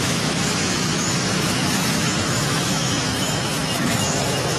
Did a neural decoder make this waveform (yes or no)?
yes